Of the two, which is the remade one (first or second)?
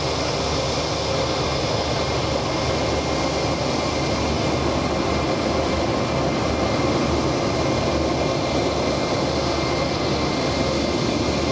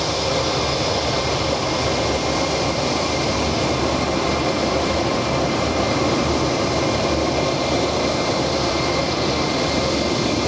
second